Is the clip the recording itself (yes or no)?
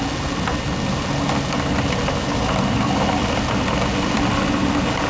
yes